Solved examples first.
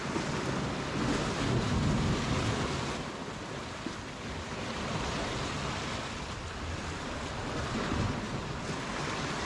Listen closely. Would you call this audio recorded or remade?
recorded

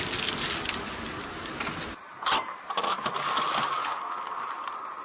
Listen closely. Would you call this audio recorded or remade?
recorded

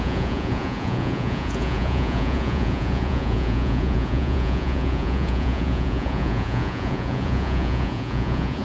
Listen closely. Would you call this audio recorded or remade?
remade